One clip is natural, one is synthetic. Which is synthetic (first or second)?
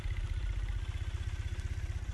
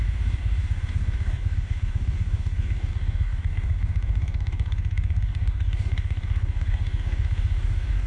second